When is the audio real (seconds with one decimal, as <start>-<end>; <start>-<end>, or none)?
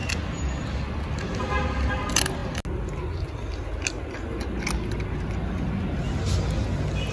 0.0-7.1